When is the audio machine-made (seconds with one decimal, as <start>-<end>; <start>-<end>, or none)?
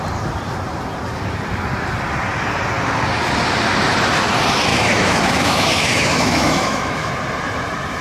4.7-7.1